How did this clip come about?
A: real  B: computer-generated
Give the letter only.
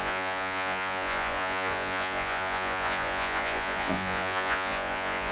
B